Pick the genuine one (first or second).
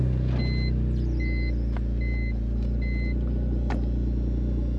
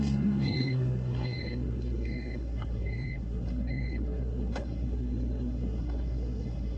first